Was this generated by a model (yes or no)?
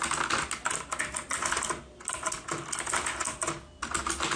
no